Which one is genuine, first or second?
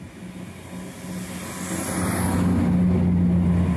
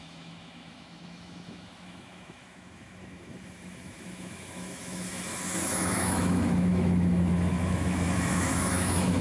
first